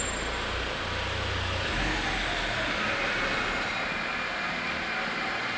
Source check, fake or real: real